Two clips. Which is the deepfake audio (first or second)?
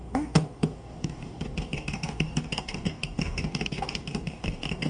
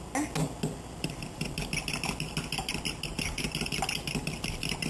first